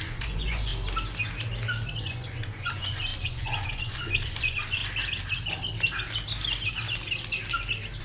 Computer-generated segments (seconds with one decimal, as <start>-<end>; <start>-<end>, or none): 0.0-0.7; 2.0-4.8